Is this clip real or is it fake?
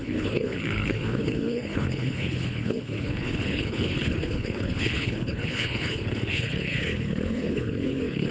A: fake